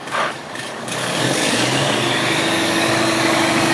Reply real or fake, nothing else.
fake